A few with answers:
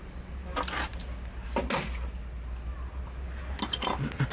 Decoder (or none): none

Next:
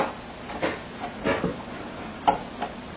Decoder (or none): none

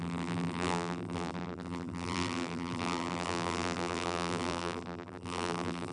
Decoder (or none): vocoder, BigVGAN v2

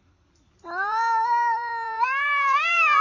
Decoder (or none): vocoder, BigVGAN v2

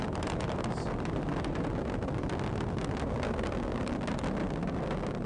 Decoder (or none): none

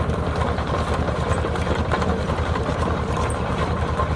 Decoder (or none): none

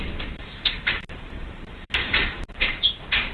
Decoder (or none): vocoder, BigVGAN v2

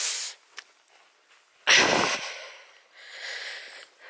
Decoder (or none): none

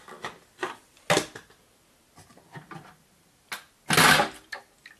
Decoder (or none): none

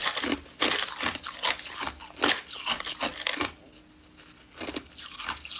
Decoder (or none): none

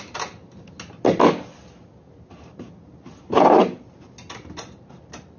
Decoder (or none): none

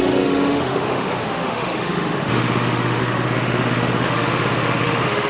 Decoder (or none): autoencoder, DAC-VAE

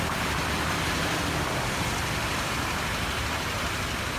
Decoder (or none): none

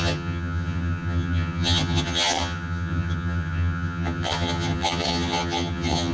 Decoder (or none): vocoder, HiFi-GAN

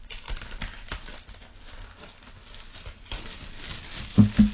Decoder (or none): none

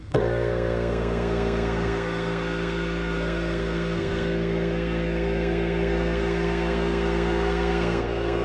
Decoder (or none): codec, SNAC